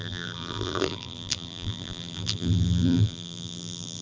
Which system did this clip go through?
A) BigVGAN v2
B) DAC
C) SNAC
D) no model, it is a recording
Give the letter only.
A